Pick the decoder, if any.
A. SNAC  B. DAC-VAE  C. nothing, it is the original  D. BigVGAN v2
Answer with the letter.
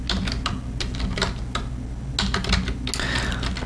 C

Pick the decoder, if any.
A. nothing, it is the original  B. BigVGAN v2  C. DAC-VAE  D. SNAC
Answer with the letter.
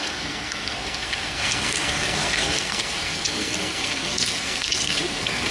D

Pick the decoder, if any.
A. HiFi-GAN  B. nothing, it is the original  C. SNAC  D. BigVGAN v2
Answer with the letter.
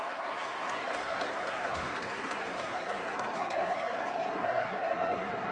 C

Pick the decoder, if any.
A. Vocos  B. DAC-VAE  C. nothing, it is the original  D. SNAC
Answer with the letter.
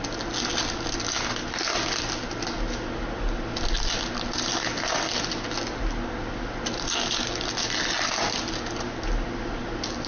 C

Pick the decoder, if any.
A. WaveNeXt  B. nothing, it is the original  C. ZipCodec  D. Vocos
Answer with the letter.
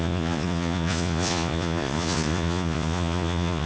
D